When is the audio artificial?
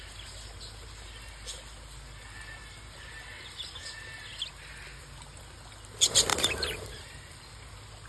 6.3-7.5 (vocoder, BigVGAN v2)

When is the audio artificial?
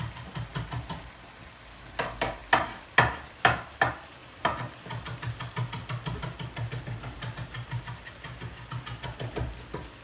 none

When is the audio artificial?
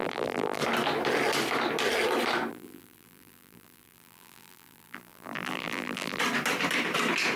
0.0-0.6 (vocoder, BigVGAN v2); 2.5-6.2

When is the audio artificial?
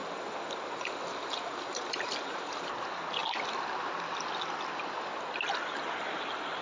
none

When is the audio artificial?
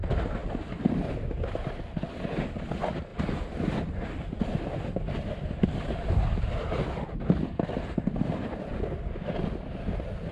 none